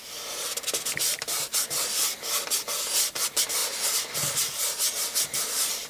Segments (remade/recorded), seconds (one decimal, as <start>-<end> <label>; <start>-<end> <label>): 0.0-5.9 recorded

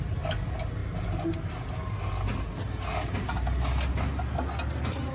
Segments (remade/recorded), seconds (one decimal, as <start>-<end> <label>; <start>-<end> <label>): 0.0-5.1 recorded

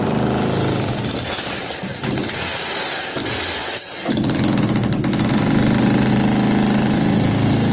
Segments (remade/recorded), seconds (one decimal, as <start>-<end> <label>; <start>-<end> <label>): 0.0-7.7 recorded